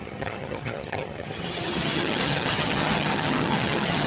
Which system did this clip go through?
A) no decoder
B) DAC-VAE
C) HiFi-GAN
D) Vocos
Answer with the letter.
C